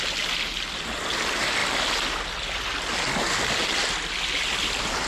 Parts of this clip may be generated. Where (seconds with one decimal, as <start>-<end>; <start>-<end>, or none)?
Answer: none

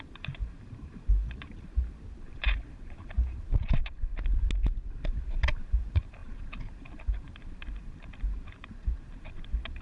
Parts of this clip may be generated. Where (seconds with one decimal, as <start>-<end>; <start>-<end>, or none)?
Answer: 0.0-4.1; 5.6-9.8

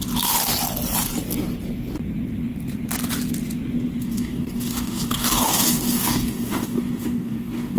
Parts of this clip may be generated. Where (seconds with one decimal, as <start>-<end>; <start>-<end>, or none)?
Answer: 4.0-7.8

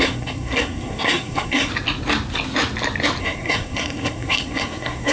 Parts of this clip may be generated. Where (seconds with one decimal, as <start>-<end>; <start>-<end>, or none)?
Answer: 0.0-1.7; 3.2-5.1

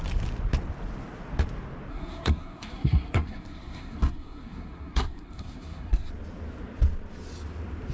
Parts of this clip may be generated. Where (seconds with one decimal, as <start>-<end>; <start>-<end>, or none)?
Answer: 1.9-6.1

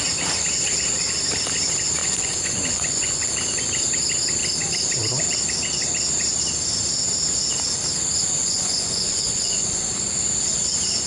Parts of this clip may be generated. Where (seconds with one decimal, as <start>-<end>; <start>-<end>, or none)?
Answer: 2.0-3.3; 8.4-9.9